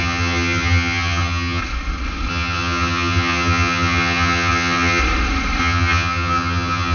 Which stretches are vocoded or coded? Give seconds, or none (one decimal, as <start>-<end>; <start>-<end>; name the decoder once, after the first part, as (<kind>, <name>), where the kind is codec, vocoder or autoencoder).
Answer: 0.0-1.6 (vocoder, HiFi-GAN); 2.3-5.0; 5.6-6.9